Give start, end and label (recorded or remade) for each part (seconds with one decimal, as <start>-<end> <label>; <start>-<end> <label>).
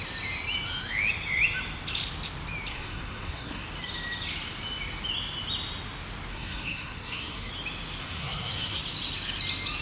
0.0-2.7 recorded; 2.7-3.6 remade; 3.6-6.3 recorded; 6.3-7.5 remade; 7.5-8.0 recorded; 8.0-8.8 remade; 8.8-9.8 recorded